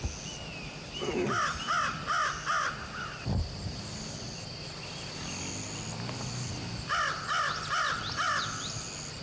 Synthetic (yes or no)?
no